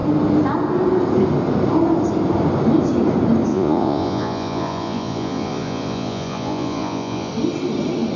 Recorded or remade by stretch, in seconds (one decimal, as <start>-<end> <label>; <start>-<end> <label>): 0.0-3.5 recorded; 3.5-7.3 remade; 7.3-8.2 recorded